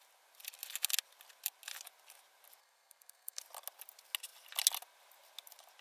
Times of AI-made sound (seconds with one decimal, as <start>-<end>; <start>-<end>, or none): 2.6-3.4